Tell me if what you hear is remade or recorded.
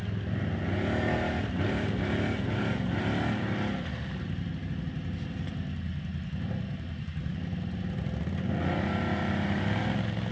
recorded